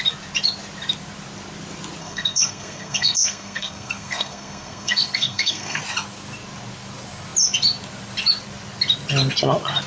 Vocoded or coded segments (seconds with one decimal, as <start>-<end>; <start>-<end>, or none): 2.0-5.8